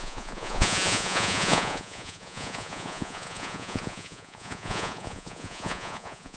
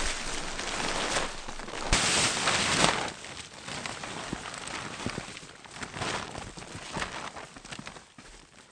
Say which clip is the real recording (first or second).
second